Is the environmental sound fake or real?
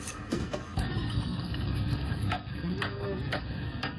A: fake